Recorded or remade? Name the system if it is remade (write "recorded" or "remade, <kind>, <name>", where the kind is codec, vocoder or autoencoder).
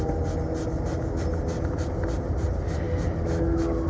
recorded